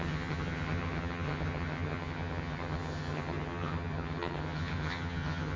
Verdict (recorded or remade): remade